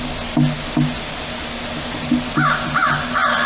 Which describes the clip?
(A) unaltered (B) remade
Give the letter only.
A